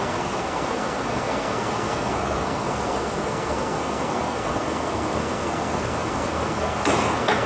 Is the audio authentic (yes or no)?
no